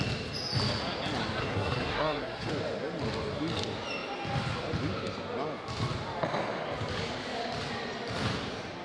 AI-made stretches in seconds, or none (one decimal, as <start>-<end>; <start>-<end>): 1.4-2.5